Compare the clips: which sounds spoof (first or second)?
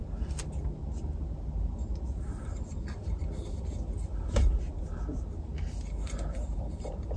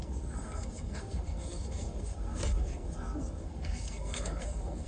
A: second